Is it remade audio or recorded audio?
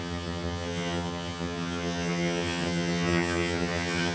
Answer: remade